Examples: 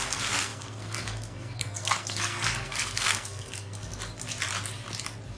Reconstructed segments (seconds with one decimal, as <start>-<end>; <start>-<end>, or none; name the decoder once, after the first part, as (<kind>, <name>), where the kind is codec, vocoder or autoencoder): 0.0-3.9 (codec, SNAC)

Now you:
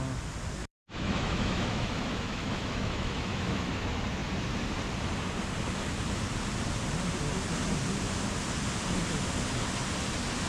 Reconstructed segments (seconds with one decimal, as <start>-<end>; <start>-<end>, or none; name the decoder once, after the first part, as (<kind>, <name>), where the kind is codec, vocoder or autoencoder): 0.6-3.7 (autoencoder, DAC-VAE)

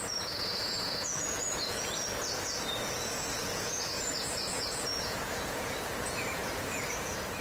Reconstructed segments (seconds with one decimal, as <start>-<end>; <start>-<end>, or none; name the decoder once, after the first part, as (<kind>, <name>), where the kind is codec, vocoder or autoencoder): 0.0-7.4 (vocoder, Vocos)

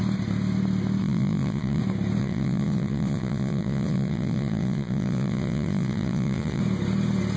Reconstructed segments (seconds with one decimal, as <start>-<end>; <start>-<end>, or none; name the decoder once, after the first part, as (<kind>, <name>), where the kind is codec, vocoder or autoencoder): 1.0-1.8 (vocoder, Vocos); 2.2-6.6